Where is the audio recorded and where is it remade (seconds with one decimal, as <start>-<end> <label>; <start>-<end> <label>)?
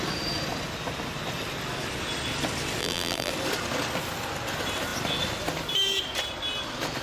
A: 0.0-2.8 recorded; 2.8-3.3 remade; 3.3-7.0 recorded